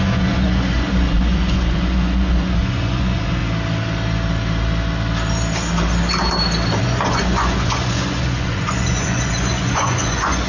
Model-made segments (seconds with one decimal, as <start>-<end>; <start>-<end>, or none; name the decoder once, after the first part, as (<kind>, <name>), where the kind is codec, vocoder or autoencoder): 0.0-3.4 (vocoder, Vocos); 6.8-10.5

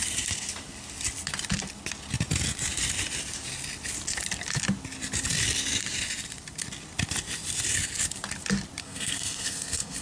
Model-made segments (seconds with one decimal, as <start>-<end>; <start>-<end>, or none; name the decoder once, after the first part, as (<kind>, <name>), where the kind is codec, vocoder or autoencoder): 8.8-10.0 (codec, SNAC)

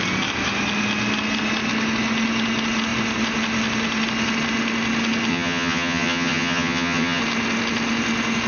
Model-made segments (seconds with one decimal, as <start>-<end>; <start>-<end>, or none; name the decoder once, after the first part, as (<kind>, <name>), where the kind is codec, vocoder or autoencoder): 5.3-7.2 (vocoder, HiFi-GAN)

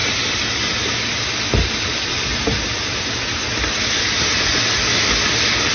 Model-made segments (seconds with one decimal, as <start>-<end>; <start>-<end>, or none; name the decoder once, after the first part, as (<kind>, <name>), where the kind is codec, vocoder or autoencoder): none

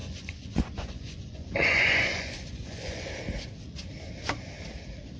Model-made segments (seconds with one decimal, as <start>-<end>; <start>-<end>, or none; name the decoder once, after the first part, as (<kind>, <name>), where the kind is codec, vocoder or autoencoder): 0.0-3.1 (vocoder, Vocos)

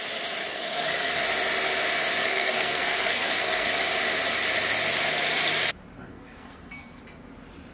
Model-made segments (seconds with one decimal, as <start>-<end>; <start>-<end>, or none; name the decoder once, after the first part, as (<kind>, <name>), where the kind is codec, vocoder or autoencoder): 0.4-1.2 (codec, SNAC); 2.2-3.7; 6.1-7.0

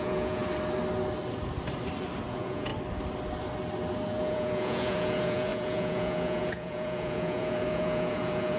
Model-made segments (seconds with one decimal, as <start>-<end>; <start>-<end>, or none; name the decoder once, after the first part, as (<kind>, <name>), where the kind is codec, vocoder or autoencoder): 0.0-0.4 (vocoder, Vocos); 2.3-2.7; 4.2-8.6